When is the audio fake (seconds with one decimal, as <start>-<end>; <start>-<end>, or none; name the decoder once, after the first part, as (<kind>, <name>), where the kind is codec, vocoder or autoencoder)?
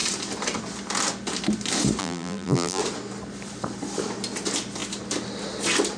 2.0-2.8 (vocoder, BigVGAN v2)